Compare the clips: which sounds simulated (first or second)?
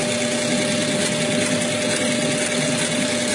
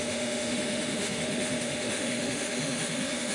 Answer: second